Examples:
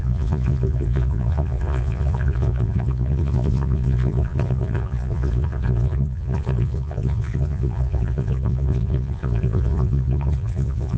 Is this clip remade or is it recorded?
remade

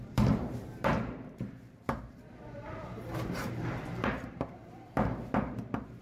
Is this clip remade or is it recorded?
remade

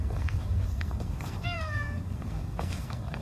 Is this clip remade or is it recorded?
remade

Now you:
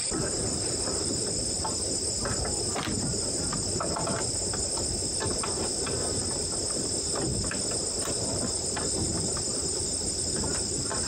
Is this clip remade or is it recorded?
recorded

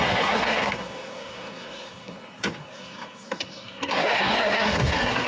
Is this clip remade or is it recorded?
remade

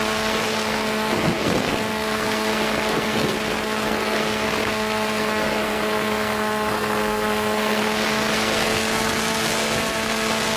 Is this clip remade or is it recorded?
remade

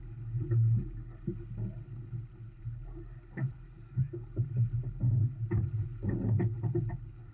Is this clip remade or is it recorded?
recorded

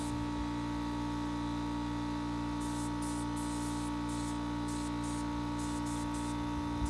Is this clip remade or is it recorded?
recorded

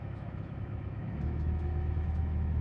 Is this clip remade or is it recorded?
remade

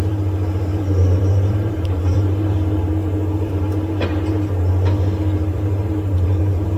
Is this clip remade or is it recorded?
remade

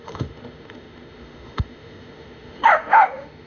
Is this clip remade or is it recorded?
remade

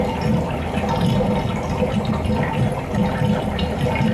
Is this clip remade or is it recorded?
recorded